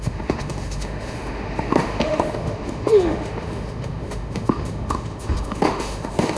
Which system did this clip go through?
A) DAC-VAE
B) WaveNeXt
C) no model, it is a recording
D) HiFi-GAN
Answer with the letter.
A